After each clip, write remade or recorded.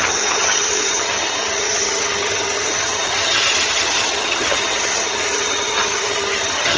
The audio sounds remade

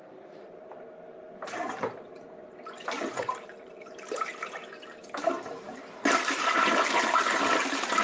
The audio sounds remade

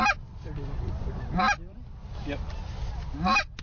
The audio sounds recorded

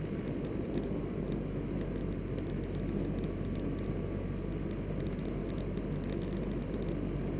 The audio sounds recorded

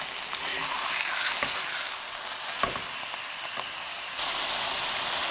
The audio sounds recorded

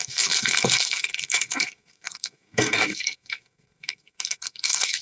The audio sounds remade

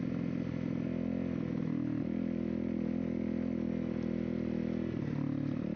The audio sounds recorded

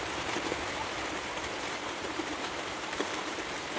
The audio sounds remade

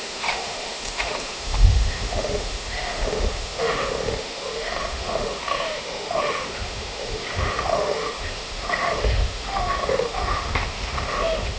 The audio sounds remade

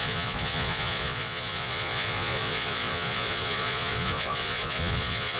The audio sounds remade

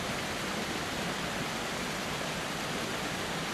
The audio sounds recorded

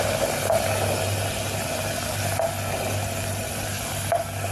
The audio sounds recorded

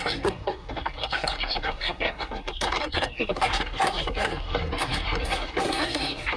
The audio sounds remade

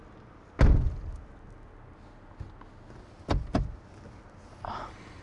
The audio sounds recorded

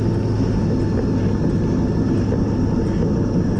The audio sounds recorded